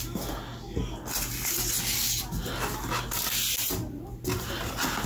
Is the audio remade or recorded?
recorded